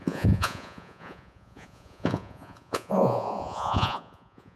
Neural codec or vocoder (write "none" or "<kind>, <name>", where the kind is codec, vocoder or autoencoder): vocoder, Vocos